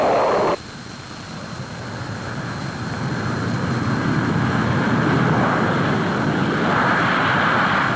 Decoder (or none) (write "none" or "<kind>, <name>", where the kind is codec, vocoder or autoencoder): none